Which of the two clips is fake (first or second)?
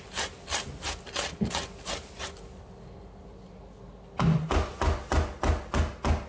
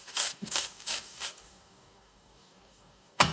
second